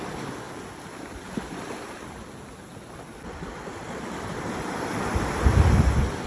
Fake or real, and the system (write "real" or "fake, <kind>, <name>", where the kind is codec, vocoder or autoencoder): fake, vocoder, BigVGAN v2